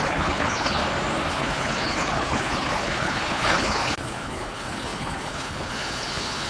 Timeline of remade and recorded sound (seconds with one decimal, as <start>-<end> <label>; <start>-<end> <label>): 0.0-0.8 remade; 0.8-1.3 recorded; 1.3-6.5 remade